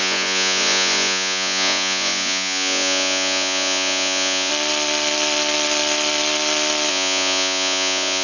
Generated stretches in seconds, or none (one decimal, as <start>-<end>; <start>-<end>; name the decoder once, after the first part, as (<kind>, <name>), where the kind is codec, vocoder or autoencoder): 0.0-4.5 (vocoder, Vocos); 6.9-8.2

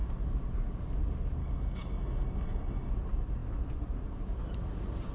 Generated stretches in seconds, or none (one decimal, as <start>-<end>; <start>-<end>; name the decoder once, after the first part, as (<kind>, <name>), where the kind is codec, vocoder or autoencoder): 1.4-2.9 (codec, DAC)

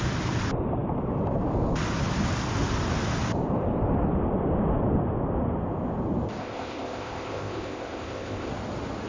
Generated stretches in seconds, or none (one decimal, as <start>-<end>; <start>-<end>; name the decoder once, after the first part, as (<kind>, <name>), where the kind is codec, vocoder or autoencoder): 6.4-8.5 (codec, ZipCodec)

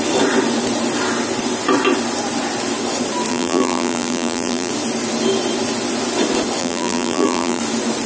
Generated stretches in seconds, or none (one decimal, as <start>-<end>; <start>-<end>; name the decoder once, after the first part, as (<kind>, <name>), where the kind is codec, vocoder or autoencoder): 3.3-4.7 (vocoder, BigVGAN v2); 6.6-7.6

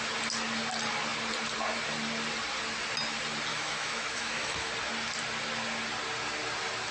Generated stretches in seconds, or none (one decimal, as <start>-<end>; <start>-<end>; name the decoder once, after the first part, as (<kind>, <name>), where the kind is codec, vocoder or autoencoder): 3.5-4.7 (autoencoder, DAC-VAE)